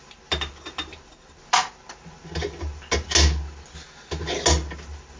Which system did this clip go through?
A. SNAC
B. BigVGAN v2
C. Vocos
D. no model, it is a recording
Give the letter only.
D